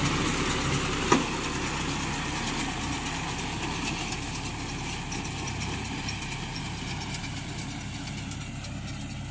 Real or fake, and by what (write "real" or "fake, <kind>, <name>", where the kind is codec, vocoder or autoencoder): real